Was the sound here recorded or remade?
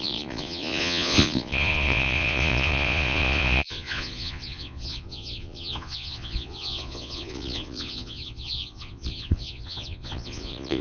remade